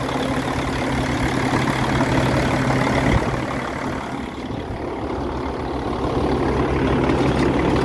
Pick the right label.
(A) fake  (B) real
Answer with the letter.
B